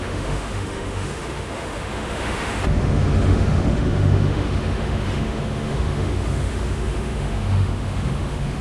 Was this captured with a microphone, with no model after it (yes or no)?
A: no